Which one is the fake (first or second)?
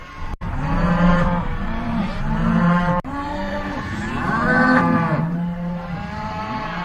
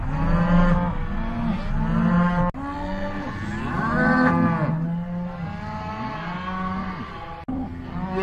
first